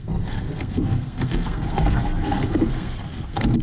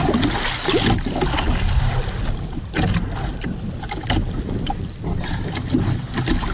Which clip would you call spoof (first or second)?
first